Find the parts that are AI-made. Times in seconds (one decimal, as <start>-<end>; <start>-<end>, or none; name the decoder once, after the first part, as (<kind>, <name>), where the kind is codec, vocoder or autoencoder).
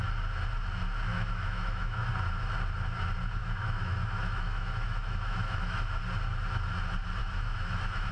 1.1-2.1 (autoencoder, DAC-VAE); 3.4-6.0; 7.2-8.1